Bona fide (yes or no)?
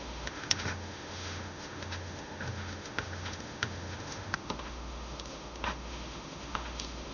no